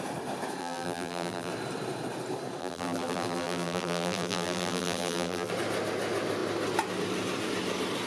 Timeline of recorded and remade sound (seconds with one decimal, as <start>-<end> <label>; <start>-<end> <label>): 0.0-0.6 recorded; 0.6-1.5 remade; 1.5-2.6 recorded; 2.6-5.5 remade; 5.5-8.1 recorded